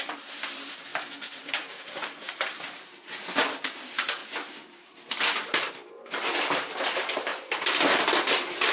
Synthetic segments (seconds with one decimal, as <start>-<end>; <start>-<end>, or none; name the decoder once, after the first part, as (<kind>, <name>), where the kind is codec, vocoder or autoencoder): 0.0-4.2 (vocoder, BigVGAN v2); 5.7-7.3; 8.2-8.7